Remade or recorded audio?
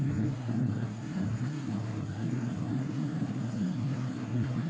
remade